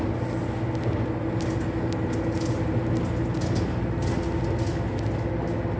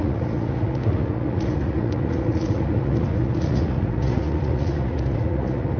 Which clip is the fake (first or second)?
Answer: second